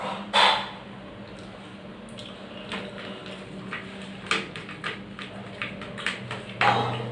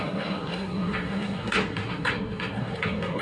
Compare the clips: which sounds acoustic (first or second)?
first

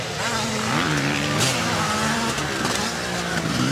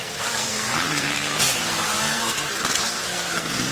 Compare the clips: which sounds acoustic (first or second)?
first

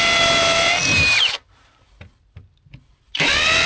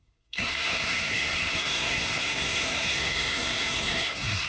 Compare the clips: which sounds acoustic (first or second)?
first